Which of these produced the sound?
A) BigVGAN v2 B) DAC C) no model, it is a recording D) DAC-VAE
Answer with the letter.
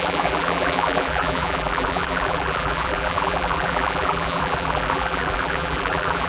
A